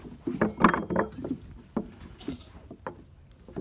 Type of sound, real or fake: real